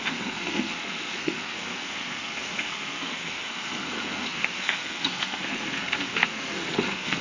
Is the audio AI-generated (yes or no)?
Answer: yes